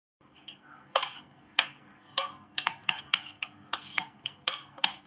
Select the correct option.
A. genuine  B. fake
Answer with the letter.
B